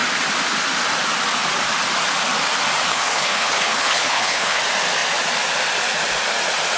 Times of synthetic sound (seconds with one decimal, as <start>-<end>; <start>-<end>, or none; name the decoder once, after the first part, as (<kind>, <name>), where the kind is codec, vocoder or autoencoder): 2.9-4.6 (codec, HILCodec)